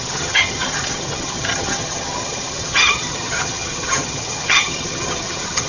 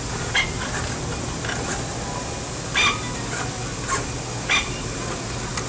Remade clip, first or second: first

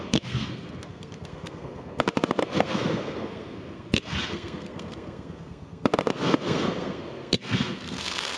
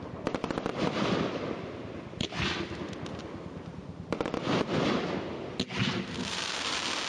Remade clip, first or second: first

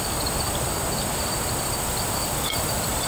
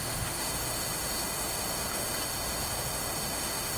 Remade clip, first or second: second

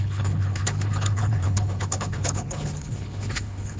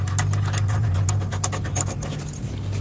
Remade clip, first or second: first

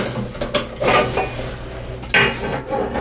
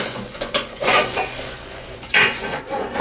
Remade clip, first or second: second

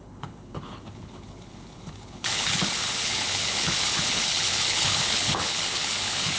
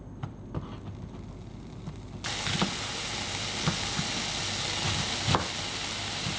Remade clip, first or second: first